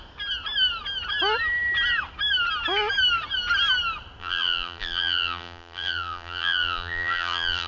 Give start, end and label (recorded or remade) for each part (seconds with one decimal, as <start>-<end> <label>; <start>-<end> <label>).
0.0-4.2 recorded; 4.2-7.7 remade